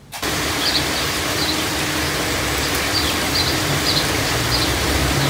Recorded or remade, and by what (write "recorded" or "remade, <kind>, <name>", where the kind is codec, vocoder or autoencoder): remade, vocoder, BigVGAN v2